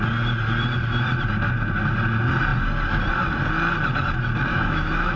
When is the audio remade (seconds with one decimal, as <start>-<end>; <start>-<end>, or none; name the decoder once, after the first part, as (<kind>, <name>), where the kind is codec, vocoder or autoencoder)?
4.5-5.2 (autoencoder, DAC-VAE)